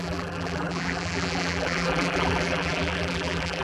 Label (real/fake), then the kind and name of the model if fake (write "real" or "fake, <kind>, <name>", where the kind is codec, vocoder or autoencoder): fake, vocoder, BigVGAN v2